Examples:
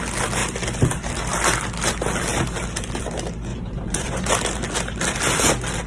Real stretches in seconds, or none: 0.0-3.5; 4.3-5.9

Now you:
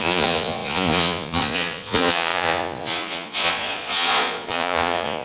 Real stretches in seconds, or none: none

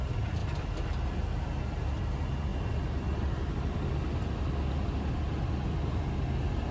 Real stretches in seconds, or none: 0.0-6.7

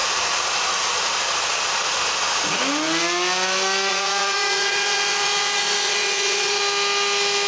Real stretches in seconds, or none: 0.0-3.9; 6.6-7.5

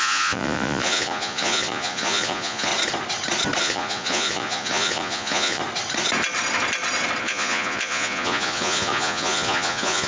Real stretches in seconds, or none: 2.7-3.6; 5.6-7.2

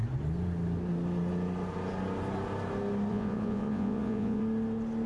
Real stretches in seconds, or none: 0.0-3.1; 4.4-5.1

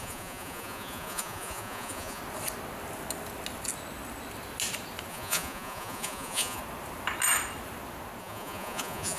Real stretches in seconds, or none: 2.2-5.1; 6.6-8.2